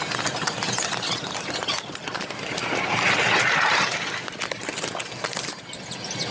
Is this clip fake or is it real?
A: real